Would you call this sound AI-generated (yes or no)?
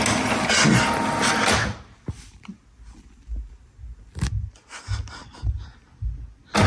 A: no